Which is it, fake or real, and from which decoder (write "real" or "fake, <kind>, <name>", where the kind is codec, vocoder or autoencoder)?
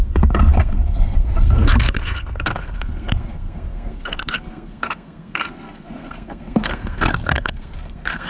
fake, codec, SNAC